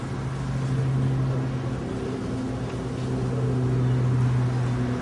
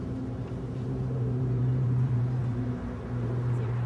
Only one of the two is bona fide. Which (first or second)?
first